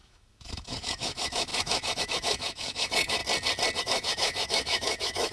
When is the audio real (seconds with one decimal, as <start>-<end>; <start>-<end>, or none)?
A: 3.2-3.8